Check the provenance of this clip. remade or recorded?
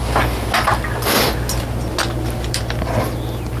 recorded